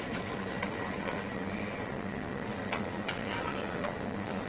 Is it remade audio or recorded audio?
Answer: remade